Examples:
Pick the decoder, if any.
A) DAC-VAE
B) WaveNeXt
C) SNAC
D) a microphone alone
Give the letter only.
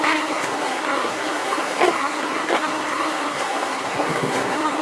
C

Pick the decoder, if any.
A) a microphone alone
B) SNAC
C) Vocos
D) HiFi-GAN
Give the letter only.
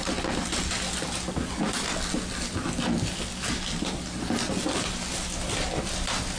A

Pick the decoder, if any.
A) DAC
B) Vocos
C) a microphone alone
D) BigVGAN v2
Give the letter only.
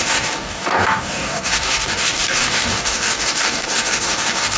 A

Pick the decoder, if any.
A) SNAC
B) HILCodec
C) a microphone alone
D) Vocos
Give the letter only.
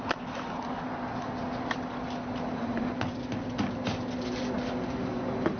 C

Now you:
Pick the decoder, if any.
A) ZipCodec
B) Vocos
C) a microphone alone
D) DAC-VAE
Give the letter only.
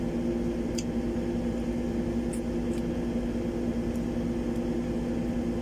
C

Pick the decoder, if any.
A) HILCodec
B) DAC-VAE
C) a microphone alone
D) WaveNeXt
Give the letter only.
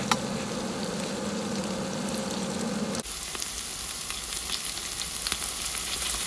C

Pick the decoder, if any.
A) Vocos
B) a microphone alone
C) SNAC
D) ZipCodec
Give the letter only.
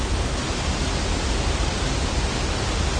B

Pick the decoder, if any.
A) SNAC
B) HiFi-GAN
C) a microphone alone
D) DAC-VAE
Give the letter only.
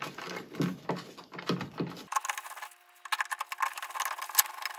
C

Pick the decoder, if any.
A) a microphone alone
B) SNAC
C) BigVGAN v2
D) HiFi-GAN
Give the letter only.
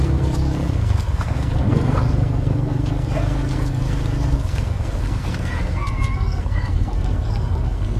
B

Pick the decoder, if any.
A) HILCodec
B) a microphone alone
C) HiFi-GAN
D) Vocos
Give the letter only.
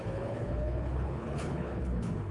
A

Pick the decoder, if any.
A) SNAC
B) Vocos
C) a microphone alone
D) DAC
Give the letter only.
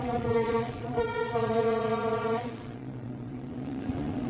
B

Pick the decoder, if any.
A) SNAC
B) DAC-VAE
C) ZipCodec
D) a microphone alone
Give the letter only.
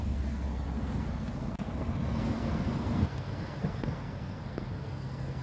A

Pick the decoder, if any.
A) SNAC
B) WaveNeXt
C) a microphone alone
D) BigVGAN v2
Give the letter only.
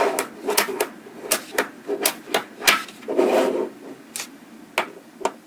C